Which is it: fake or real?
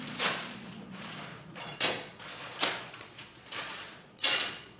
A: fake